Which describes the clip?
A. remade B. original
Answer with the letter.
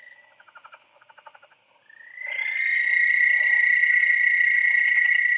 B